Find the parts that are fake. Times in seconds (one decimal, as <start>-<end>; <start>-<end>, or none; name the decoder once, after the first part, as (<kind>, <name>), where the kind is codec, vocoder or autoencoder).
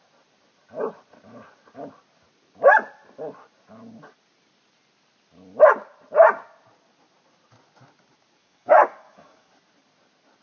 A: 8.4-9.5 (codec, DAC)